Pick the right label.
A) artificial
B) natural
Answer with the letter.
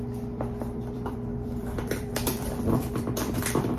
A